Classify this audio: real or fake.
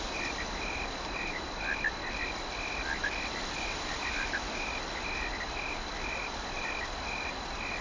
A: real